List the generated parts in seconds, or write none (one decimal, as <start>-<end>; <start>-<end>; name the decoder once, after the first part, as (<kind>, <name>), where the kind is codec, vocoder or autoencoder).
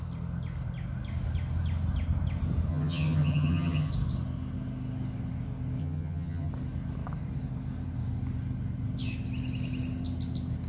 2.7-3.9 (vocoder, HiFi-GAN); 5.8-6.5